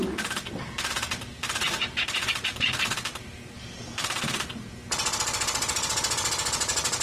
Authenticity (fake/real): real